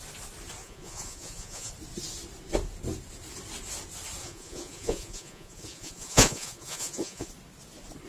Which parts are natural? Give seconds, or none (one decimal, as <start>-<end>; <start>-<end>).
0.0-0.6; 1.7-4.2; 7.3-8.1